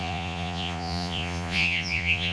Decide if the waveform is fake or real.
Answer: fake